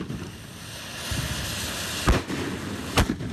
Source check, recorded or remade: recorded